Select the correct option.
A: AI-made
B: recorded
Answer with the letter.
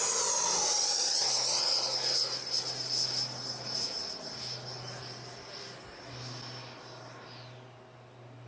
B